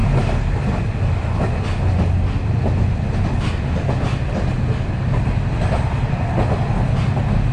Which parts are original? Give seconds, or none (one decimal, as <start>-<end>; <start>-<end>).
0.0-7.5